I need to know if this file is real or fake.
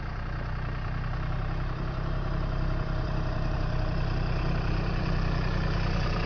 fake